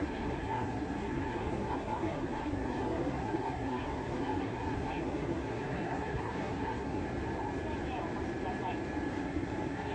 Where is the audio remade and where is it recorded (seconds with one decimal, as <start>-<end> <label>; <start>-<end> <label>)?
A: 0.0-7.0 remade; 7.0-9.1 recorded; 9.1-9.9 remade